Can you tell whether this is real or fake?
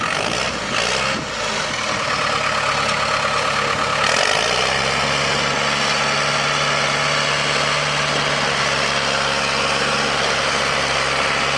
real